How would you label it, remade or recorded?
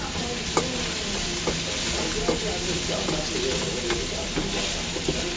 recorded